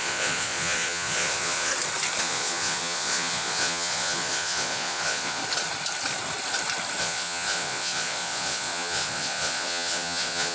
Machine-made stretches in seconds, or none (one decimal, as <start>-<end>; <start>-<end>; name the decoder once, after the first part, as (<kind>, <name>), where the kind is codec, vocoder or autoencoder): 0.0-1.7 (vocoder, Vocos); 2.2-5.4; 7.0-10.5